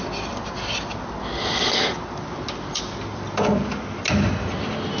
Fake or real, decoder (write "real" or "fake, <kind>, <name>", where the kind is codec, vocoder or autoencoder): real